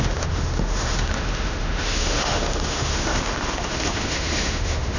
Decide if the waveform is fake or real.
fake